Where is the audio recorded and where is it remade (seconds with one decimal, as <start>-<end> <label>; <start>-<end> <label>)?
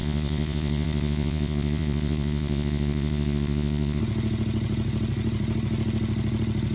0.0-4.0 remade; 4.0-6.7 recorded